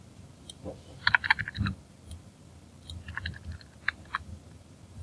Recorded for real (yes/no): no